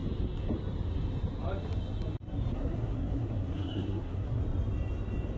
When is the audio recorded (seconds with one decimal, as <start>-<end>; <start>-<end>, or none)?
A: 0.0-2.5; 4.4-5.4